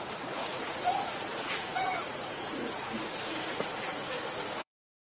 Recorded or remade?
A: remade